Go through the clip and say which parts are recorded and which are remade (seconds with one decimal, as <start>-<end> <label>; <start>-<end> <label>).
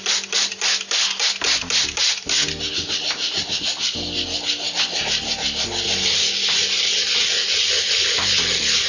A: 0.0-8.9 recorded